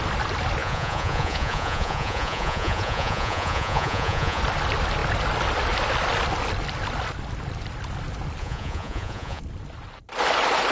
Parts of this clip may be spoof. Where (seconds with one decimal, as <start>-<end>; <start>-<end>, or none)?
0.6-4.4; 8.4-9.4